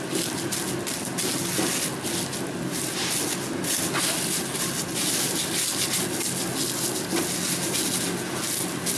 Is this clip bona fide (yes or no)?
yes